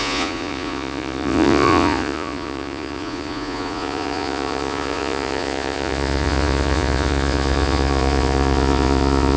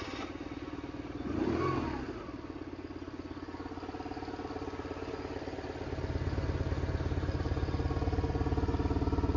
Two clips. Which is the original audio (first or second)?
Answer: second